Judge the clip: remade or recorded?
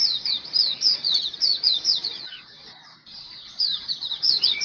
remade